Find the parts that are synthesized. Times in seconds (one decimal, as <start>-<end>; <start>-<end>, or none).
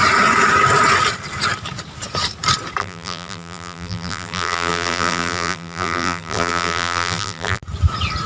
2.8-7.6